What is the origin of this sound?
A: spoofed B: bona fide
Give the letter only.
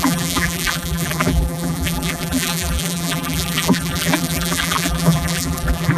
A